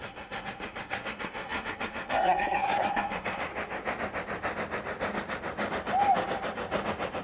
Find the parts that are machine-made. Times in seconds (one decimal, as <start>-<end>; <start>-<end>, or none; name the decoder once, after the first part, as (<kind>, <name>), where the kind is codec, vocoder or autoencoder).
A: 0.0-3.5 (codec, SNAC)